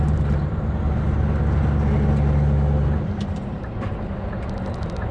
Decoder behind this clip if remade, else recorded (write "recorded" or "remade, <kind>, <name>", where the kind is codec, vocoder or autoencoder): recorded